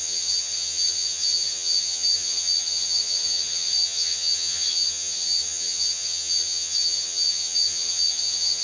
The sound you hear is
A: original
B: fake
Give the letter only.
B